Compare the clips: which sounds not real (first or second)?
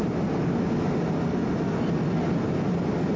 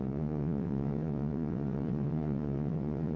second